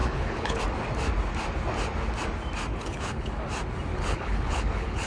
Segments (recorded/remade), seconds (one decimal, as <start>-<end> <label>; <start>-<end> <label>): 0.0-0.6 remade; 0.6-2.7 recorded; 2.7-3.3 remade; 3.3-3.9 recorded; 3.9-5.1 remade